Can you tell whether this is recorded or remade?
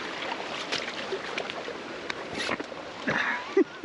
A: remade